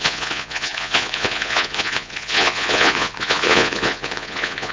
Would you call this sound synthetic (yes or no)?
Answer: yes